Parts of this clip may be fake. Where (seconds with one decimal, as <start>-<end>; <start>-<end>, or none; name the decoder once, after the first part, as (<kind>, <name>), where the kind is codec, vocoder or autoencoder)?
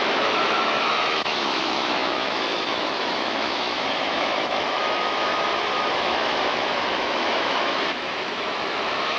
0.0-5.3 (autoencoder, DAC-VAE); 5.9-9.2